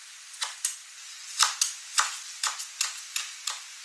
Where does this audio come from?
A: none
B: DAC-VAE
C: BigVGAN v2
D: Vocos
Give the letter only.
A